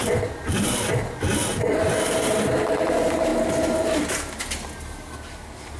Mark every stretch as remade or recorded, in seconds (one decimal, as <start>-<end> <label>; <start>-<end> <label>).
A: 0.0-5.8 recorded